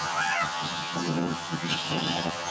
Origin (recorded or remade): remade